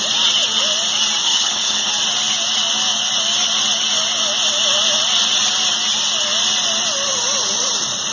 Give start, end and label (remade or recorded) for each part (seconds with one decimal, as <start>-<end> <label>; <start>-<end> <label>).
0.0-1.2 recorded; 1.2-1.9 remade; 1.9-8.1 recorded